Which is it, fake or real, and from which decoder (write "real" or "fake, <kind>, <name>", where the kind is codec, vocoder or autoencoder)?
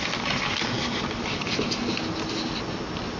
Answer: real